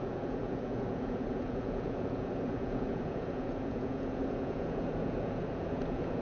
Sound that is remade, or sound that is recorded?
remade